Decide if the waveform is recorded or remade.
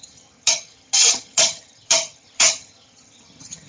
remade